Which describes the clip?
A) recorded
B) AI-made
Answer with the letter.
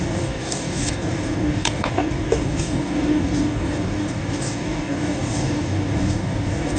B